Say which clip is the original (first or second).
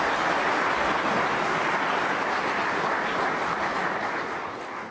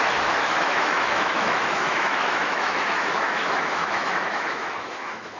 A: first